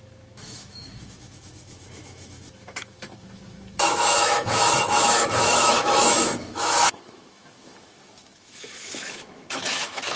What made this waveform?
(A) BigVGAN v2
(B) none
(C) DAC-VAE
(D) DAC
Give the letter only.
C